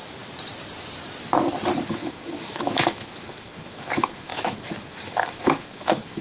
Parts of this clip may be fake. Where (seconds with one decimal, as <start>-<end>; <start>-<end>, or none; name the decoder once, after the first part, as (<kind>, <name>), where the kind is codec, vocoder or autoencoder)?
1.9-6.2 (autoencoder, DAC-VAE)